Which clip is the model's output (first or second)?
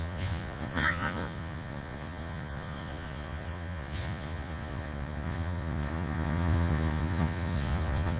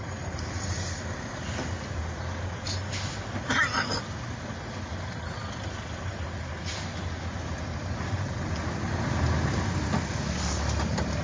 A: first